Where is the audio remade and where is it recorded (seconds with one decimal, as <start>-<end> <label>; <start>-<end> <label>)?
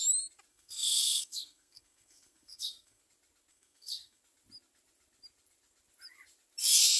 0.0-0.5 recorded; 0.5-3.0 remade; 3.0-3.5 recorded; 3.5-4.2 remade; 4.2-7.0 recorded